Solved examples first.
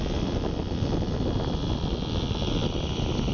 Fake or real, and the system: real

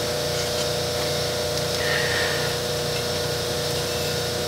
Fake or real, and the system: real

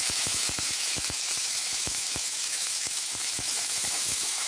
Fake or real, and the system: fake, autoencoder, DAC-VAE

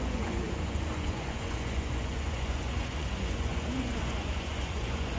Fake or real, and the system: fake, vocoder, Vocos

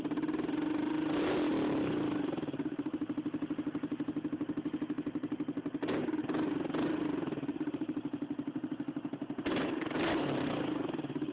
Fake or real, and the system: real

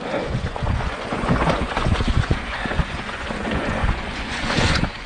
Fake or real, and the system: fake, vocoder, Vocos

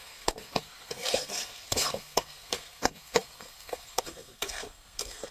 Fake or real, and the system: fake, codec, SNAC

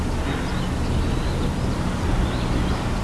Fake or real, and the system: real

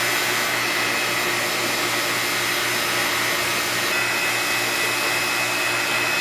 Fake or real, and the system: real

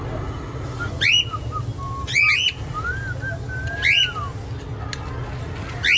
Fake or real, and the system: real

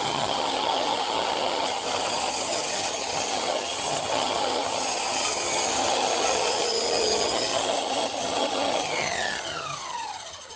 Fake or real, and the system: fake, vocoder, HiFi-GAN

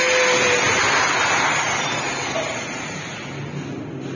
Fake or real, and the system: real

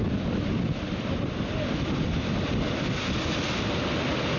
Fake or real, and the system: real